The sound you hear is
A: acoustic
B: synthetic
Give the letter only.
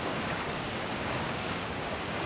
B